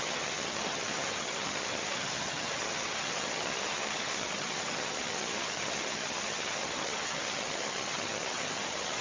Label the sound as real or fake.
fake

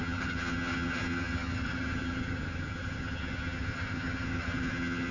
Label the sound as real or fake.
fake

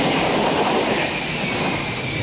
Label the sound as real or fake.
real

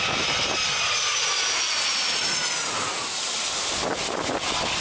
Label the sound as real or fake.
real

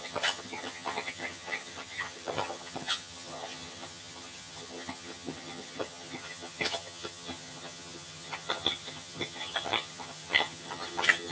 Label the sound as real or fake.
fake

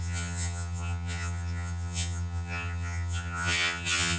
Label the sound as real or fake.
fake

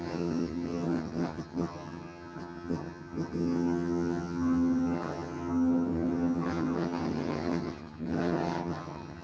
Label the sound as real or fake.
fake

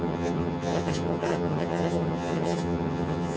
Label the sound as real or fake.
fake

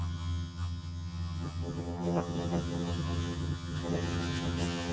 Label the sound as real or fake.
fake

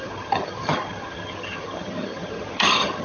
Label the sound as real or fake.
fake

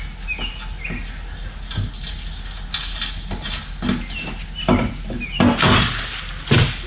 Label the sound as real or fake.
real